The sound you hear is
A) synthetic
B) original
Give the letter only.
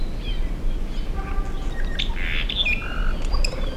B